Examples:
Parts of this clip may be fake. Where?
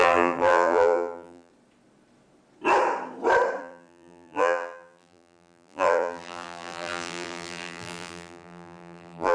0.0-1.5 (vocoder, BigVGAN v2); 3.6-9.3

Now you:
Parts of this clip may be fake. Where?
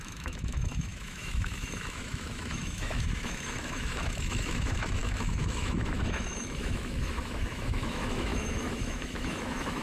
0.0-9.8 (autoencoder, DAC-VAE)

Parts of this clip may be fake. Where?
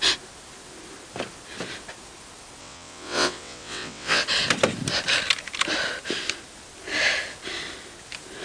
2.6-4.2 (vocoder, WaveNeXt)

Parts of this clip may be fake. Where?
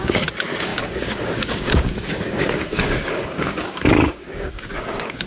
0.0-5.3 (codec, DAC)